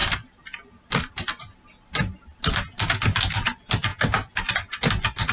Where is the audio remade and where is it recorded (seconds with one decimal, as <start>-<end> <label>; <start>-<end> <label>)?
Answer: 0.0-5.3 recorded